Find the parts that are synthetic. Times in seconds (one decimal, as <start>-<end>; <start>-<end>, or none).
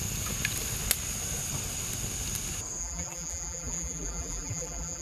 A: 2.8-5.0